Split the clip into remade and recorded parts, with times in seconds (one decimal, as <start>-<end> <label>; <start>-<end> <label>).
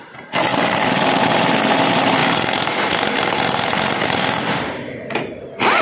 0.0-0.5 recorded; 0.5-1.3 remade; 1.3-5.8 recorded